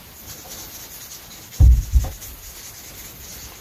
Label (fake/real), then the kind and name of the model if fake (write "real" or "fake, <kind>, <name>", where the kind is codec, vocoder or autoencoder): real